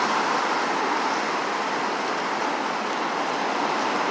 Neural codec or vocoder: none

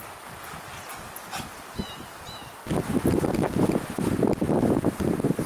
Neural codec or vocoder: none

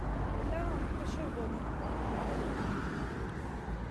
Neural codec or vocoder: none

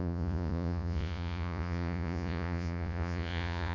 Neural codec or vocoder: vocoder, Vocos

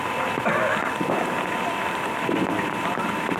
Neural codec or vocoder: vocoder, BigVGAN v2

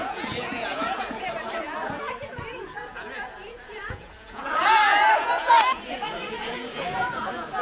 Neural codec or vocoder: vocoder, Vocos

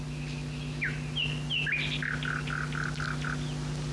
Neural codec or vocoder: none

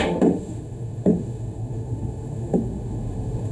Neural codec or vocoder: autoencoder, DAC-VAE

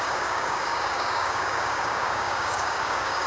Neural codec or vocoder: codec, DAC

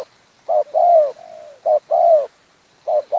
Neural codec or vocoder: none